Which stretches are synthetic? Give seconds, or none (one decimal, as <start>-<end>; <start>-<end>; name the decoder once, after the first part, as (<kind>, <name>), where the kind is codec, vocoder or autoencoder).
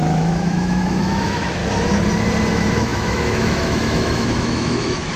0.0-1.6 (autoencoder, DAC-VAE); 2.5-5.2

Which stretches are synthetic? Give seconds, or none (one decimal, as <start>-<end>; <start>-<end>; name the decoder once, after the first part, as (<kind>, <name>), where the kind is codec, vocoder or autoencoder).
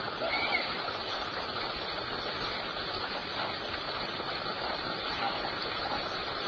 none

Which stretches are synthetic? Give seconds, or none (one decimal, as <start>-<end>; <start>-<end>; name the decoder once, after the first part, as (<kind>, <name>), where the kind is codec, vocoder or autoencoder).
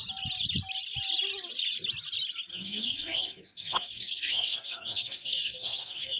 2.5-6.2 (codec, DAC)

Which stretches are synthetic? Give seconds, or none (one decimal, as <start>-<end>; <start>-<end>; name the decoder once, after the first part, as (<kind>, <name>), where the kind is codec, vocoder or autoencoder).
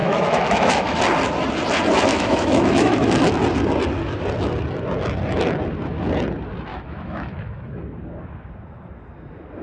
0.0-1.0 (autoencoder, DAC-VAE); 2.1-3.3; 6.7-7.8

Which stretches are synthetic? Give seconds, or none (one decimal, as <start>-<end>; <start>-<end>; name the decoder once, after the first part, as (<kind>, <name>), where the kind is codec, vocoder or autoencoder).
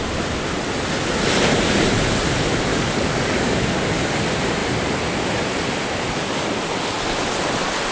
2.7-4.0 (codec, DAC)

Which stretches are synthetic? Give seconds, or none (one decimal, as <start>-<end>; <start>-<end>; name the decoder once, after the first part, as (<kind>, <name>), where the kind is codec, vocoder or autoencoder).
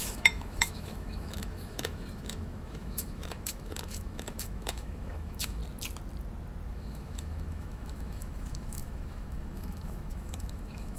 0.0-5.6 (autoencoder, DAC-VAE); 6.7-11.0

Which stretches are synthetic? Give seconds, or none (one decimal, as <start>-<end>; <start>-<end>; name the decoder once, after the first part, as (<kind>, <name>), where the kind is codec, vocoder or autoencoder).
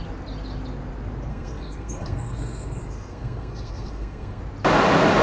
1.3-4.4 (codec, SNAC)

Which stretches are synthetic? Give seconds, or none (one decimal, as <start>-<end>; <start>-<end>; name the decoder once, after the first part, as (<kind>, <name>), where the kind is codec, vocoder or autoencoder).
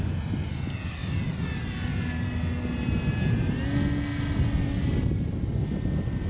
none